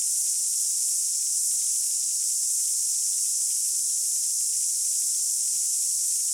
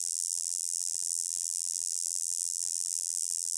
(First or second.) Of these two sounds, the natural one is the first